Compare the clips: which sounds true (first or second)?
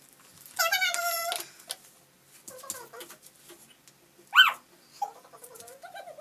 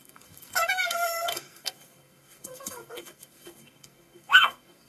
first